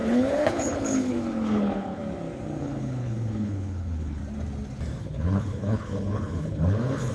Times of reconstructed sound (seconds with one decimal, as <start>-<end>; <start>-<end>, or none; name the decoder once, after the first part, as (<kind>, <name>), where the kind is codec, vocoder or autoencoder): 0.0-2.0 (codec, HILCodec); 2.6-4.2; 5.0-7.1